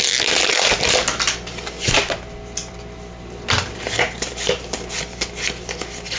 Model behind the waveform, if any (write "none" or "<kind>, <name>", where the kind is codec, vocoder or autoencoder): none